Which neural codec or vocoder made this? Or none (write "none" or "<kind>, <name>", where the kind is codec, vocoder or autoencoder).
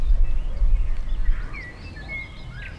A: none